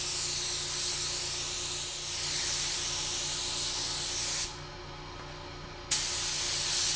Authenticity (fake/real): real